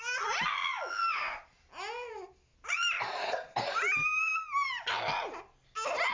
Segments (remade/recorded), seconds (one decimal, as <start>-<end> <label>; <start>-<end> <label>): 0.0-6.1 recorded